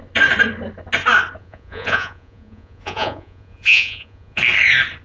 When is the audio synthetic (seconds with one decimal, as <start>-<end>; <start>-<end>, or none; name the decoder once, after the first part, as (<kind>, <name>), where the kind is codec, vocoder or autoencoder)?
1.4-4.4 (vocoder, Vocos)